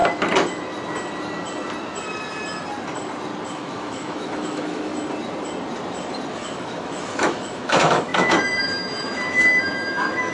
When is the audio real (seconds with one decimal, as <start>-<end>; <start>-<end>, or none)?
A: 0.0-3.5; 4.9-6.3